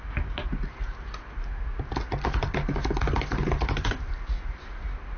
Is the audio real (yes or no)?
yes